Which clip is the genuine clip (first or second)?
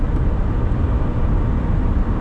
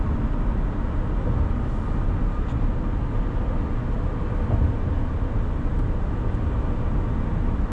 second